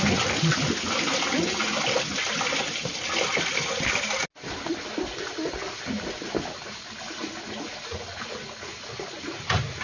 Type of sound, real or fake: real